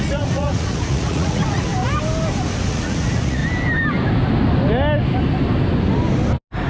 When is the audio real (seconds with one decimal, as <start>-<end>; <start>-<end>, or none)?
1.7-2.7; 3.4-6.7